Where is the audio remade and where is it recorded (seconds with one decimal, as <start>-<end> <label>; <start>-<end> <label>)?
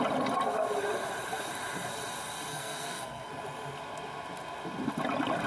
0.0-2.5 recorded; 2.5-3.3 remade; 3.3-5.5 recorded